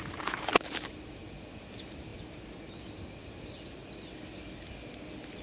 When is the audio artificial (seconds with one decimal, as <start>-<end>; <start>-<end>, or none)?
none